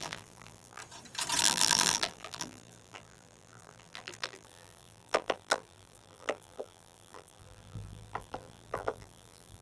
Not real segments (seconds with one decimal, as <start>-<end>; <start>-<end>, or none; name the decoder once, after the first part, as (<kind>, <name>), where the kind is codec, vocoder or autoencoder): 0.0-0.8 (vocoder, BigVGAN v2); 1.4-9.6